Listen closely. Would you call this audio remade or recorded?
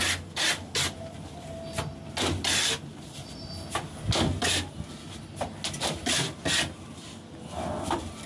recorded